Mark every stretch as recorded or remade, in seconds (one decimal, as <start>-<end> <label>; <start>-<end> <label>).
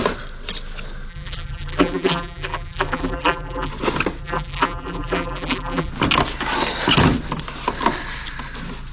0.0-1.1 recorded; 1.1-3.7 remade; 3.7-4.2 recorded; 4.2-5.9 remade; 5.9-8.9 recorded